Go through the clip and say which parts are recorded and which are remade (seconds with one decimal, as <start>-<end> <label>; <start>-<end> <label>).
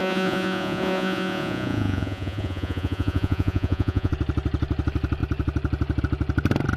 0.0-4.1 remade; 4.1-6.8 recorded